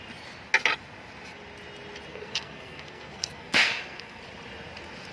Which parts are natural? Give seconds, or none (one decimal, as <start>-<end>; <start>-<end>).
0.0-2.1; 4.2-5.1